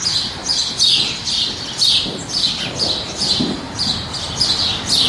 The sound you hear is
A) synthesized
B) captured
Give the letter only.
B